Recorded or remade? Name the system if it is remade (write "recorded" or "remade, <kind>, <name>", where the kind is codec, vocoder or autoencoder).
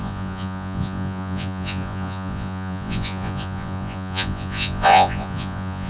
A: remade, vocoder, Vocos